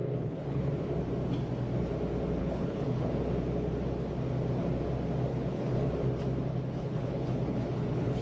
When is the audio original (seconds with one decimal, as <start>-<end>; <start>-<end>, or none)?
0.7-2.4; 3.1-5.3; 5.9-6.5